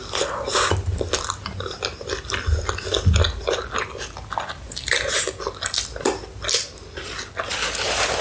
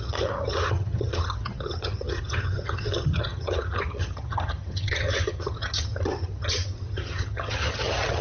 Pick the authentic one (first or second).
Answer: first